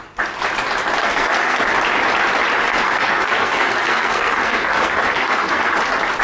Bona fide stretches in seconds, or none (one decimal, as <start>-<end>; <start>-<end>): 0.0-1.0; 1.6-2.7; 5.8-6.2